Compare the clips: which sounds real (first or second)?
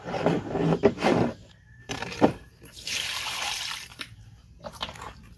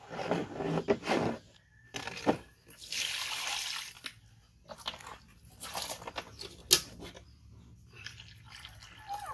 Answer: second